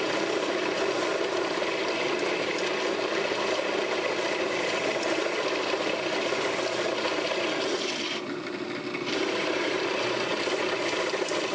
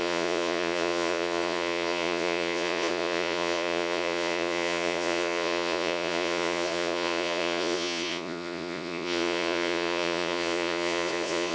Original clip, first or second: first